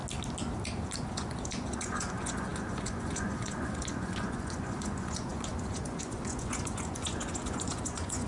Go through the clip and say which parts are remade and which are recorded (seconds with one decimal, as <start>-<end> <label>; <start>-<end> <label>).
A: 0.0-1.0 recorded; 1.0-8.3 remade